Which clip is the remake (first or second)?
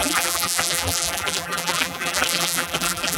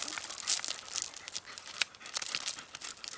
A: first